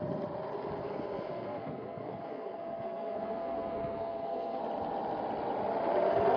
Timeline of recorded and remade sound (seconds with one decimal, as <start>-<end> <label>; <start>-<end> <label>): 0.0-0.8 recorded; 0.8-4.6 remade; 4.6-6.4 recorded